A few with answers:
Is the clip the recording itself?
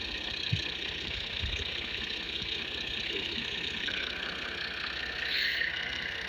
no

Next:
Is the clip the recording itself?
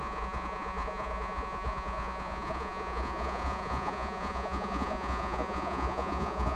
no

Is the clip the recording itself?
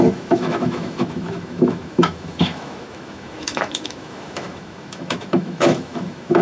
no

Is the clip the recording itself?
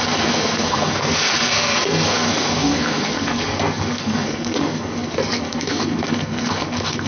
no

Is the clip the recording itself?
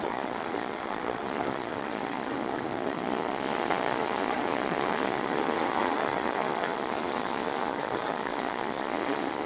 no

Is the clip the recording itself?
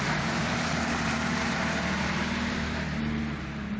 no